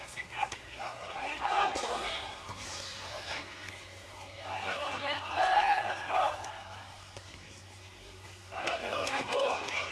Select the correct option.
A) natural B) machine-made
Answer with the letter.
B